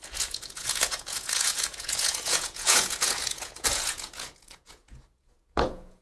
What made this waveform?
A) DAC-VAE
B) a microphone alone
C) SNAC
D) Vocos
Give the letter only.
D